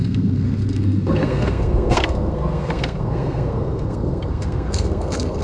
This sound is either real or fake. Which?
fake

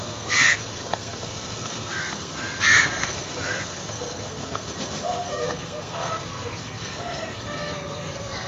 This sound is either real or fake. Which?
fake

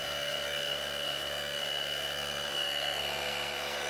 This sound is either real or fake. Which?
fake